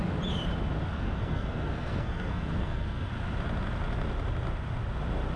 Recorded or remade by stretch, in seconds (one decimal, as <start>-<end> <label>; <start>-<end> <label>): 0.0-0.9 recorded; 0.9-3.1 remade; 3.1-5.4 recorded